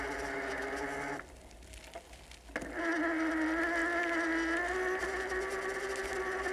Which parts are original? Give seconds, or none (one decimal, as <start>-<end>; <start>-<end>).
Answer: 0.0-6.5